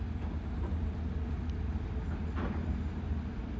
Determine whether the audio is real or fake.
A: real